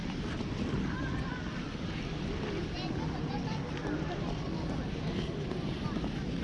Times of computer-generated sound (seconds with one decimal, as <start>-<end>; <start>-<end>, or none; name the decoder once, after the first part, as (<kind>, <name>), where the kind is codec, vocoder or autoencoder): none